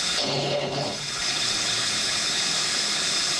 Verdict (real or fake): fake